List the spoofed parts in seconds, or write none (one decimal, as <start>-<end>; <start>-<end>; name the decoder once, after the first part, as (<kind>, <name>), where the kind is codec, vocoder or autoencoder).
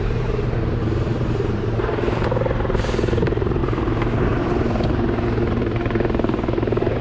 0.0-7.0 (vocoder, BigVGAN v2)